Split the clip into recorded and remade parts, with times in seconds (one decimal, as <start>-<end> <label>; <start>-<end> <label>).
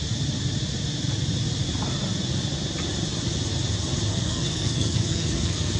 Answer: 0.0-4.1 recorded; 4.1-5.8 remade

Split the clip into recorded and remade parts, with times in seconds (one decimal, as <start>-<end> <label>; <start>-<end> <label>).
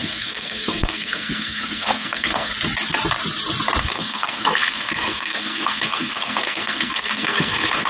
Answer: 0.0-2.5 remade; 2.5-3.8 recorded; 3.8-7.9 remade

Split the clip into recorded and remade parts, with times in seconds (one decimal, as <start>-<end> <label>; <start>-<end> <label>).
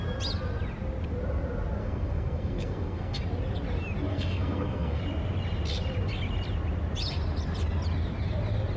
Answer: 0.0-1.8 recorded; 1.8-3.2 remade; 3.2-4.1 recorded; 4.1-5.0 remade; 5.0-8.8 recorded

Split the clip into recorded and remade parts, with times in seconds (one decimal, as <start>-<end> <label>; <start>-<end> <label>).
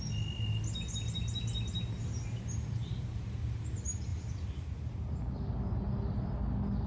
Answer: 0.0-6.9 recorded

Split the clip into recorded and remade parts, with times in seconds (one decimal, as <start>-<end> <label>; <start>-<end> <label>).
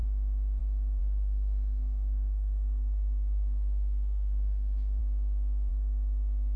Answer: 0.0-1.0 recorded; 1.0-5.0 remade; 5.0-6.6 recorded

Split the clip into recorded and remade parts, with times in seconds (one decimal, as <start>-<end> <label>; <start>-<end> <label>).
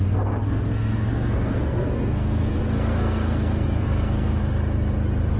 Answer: 0.0-4.4 remade; 4.4-5.4 recorded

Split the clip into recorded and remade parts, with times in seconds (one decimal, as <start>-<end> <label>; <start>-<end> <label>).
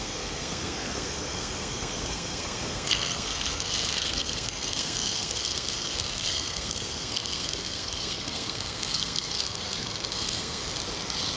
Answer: 0.0-10.6 remade; 10.6-11.4 recorded